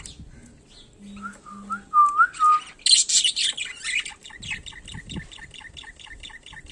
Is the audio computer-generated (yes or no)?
no